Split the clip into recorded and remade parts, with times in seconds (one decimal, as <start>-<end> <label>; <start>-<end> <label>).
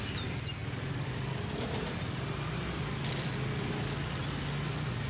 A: 0.0-5.1 recorded